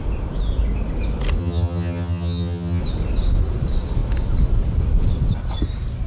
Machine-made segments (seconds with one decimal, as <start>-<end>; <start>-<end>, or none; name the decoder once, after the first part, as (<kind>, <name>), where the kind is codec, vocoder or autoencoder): 1.4-2.8 (vocoder, HiFi-GAN)